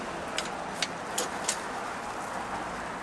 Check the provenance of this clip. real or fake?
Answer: real